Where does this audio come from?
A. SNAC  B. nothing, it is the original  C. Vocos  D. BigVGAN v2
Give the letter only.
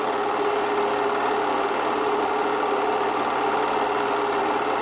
B